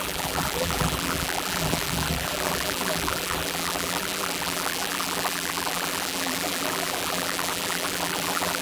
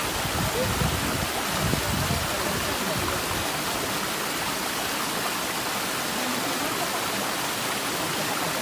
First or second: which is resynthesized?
first